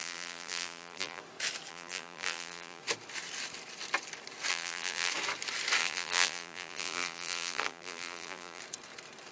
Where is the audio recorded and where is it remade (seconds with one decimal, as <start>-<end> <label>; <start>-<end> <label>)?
0.0-1.2 remade; 1.2-1.7 recorded; 1.7-2.8 remade; 2.8-4.5 recorded; 4.5-5.1 remade; 5.1-5.8 recorded; 5.8-8.6 remade; 8.6-9.3 recorded